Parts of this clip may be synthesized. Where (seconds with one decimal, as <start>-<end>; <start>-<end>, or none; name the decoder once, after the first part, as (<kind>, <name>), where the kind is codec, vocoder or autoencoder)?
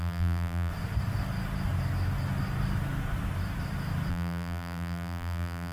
0.0-0.7 (vocoder, BigVGAN v2); 4.1-5.7